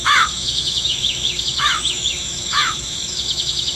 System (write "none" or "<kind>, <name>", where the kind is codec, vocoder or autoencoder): autoencoder, DAC-VAE